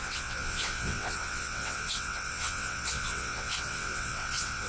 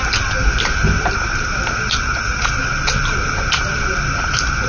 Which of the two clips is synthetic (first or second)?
first